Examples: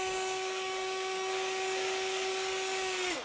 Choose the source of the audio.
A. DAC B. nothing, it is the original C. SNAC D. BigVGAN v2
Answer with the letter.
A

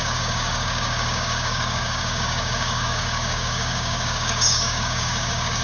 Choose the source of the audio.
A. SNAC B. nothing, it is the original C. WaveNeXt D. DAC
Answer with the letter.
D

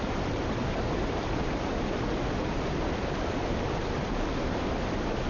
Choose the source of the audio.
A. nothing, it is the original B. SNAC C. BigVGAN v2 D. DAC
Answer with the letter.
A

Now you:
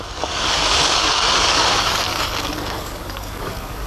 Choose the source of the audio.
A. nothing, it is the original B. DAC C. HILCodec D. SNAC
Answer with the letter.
B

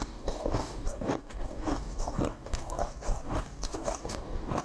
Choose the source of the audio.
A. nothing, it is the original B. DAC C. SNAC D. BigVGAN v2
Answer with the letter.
B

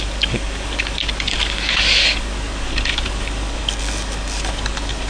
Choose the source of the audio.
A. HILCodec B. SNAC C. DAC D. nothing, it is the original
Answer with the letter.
C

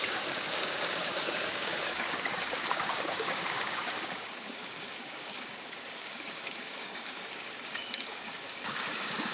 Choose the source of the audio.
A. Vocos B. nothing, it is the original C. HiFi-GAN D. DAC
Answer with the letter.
D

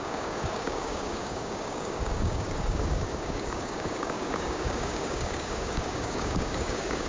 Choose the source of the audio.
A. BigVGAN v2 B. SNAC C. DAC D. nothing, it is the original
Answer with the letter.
C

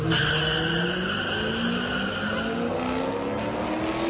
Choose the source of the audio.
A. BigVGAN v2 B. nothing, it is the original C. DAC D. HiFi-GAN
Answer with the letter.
B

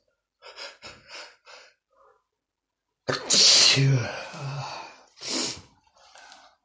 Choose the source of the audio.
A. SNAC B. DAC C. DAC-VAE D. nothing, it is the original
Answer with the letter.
D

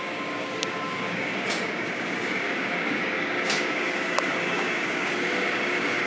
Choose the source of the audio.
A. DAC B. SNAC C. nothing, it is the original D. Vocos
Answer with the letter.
A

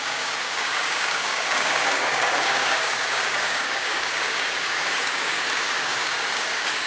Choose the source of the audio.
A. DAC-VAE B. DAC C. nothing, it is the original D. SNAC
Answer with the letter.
B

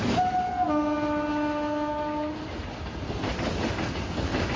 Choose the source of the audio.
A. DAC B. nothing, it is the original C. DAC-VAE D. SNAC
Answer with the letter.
B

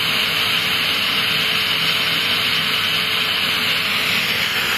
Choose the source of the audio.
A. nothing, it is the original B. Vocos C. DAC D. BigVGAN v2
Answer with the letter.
A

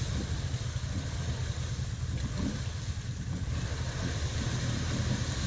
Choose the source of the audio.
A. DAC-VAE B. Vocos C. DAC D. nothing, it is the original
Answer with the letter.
D